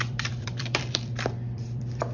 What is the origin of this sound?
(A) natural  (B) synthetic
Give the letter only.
B